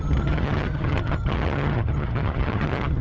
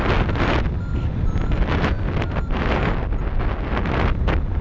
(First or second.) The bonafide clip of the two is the second